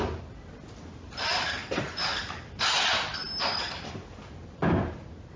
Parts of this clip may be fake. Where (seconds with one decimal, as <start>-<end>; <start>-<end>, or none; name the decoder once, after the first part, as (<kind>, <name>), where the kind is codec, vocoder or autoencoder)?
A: none